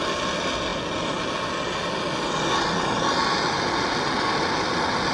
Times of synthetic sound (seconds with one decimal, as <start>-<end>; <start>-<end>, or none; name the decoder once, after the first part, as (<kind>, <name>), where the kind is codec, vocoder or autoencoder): none